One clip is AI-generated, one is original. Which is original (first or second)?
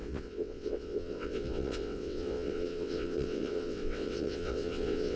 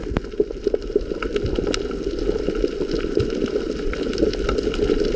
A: second